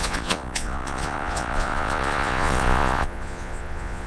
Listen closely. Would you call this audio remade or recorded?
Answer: remade